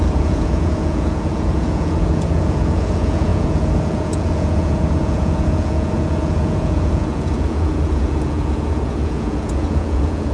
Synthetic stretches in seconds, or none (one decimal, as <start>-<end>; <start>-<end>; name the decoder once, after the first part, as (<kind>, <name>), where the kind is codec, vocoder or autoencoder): 0.0-10.3 (vocoder, Vocos)